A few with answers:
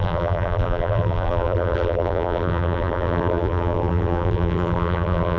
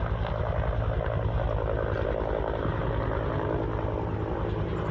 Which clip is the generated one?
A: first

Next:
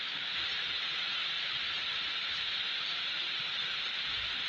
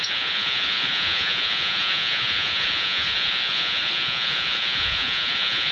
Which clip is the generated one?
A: second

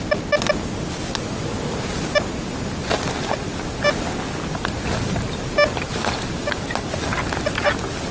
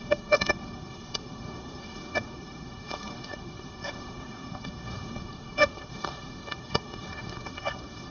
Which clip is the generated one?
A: second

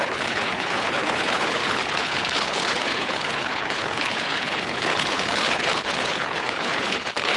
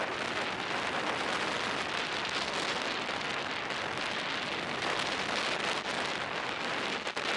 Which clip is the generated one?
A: first